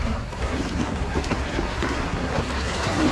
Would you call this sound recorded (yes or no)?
no